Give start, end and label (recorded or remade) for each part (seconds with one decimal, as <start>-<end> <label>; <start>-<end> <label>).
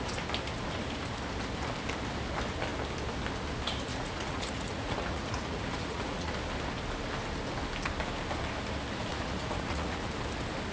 0.0-3.9 recorded; 3.9-6.3 remade; 6.3-9.1 recorded; 9.1-10.1 remade; 10.1-10.7 recorded